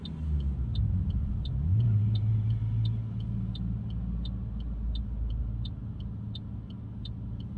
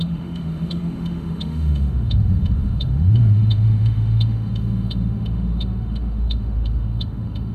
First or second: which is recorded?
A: first